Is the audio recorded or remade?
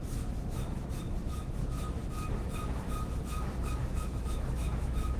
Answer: remade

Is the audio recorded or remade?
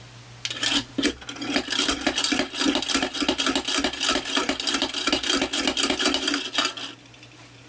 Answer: recorded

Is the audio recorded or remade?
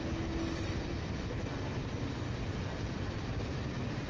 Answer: recorded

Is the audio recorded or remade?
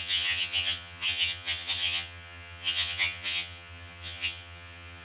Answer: remade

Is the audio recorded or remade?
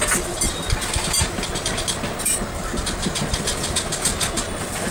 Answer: recorded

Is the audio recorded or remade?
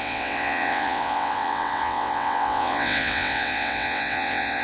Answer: remade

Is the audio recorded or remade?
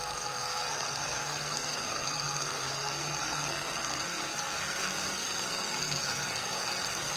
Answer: remade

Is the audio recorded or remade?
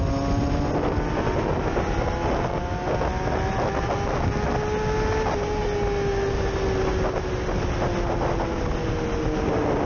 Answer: recorded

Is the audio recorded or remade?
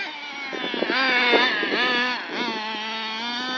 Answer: recorded